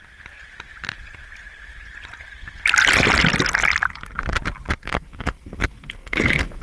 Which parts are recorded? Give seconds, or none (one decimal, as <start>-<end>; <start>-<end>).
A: 0.0-4.8